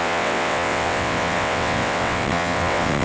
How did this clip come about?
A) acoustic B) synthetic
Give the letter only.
B